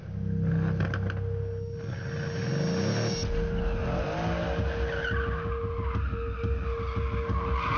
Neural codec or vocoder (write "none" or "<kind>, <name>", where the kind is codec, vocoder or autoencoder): none